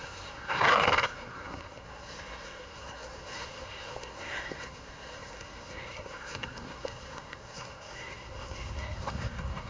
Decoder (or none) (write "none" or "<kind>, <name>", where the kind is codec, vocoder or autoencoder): codec, SNAC